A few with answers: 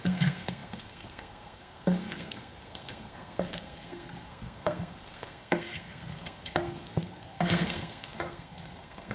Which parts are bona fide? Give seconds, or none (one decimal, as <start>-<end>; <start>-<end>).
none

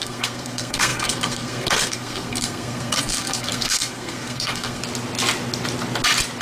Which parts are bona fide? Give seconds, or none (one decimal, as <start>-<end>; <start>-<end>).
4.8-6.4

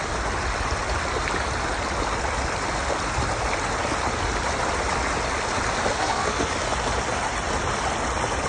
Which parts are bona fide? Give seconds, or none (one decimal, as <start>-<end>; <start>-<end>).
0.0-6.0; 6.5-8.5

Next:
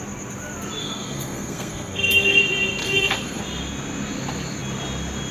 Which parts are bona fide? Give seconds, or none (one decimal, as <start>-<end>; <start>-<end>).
0.0-0.8; 2.4-2.8; 3.4-5.3

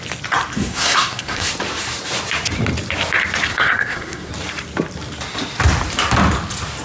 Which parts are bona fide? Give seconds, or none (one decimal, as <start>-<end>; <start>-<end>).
0.0-0.5; 1.5-3.5; 4.3-6.8

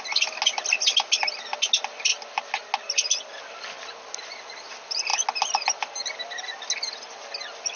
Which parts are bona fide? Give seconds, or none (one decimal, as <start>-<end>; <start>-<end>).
0.0-7.8

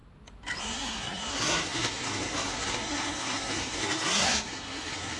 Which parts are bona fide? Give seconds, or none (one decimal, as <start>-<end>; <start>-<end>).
0.0-0.6

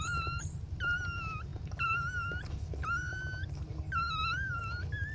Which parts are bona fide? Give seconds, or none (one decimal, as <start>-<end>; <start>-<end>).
0.0-5.1